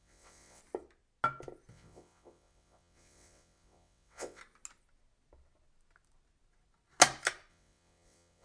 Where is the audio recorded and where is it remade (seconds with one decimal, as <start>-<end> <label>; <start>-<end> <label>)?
0.0-0.6 remade; 0.6-1.7 recorded; 1.7-4.4 remade; 4.4-7.5 recorded; 7.5-8.4 remade

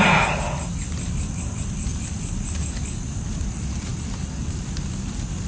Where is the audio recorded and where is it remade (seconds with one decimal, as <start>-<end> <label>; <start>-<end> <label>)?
0.0-5.5 recorded

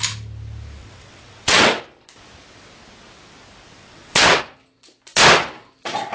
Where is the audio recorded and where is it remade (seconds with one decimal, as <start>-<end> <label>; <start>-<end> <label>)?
0.0-0.8 recorded; 0.8-1.8 remade; 1.8-3.8 recorded; 3.8-4.4 remade; 4.4-6.1 recorded

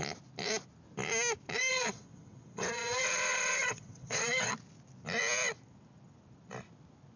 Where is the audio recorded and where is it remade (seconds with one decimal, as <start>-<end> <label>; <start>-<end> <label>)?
0.0-1.7 recorded; 1.7-4.5 remade; 4.5-7.2 recorded